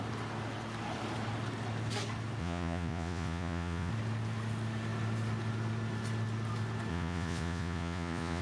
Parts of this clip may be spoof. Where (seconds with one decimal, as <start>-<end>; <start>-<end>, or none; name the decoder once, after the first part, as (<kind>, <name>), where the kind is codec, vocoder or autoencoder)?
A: 2.4-3.9 (vocoder, Vocos); 6.9-8.4